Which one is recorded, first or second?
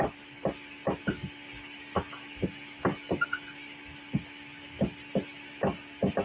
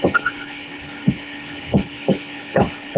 first